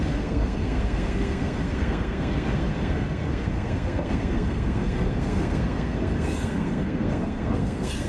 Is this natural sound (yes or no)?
no